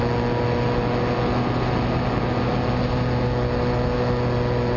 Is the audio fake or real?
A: real